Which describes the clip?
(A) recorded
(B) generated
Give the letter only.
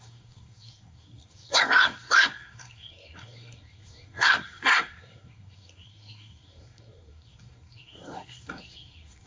B